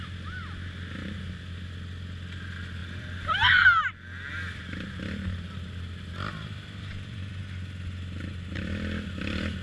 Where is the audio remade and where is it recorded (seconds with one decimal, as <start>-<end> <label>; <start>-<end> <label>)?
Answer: 0.0-2.8 recorded; 2.8-3.9 remade; 3.9-6.3 recorded; 6.3-7.4 remade; 7.4-9.6 recorded